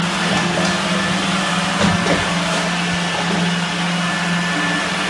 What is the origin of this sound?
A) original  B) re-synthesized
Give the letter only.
A